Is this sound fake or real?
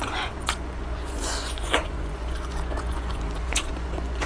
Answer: fake